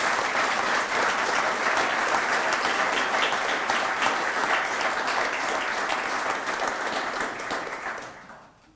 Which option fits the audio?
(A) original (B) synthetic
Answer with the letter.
A